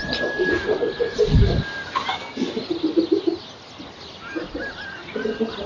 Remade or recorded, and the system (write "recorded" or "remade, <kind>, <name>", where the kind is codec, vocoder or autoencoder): recorded